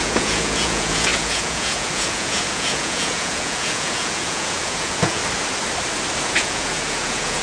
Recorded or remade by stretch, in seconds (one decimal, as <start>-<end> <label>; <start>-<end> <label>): 0.0-5.2 remade; 5.2-6.2 recorded; 6.2-7.4 remade